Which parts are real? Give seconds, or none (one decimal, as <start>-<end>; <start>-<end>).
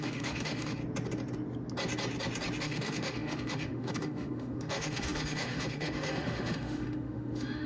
0.8-2.6